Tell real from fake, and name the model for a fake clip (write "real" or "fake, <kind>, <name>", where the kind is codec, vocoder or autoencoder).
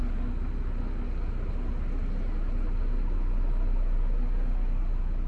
real